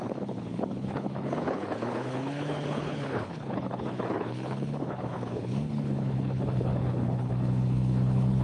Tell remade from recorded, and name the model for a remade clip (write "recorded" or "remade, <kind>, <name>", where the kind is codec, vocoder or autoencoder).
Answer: remade, codec, HILCodec